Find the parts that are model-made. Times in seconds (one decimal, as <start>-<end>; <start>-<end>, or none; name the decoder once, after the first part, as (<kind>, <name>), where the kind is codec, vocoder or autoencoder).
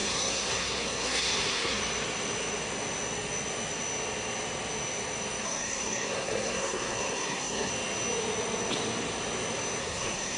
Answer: 0.0-1.8 (codec, SNAC); 5.4-7.7; 9.8-10.4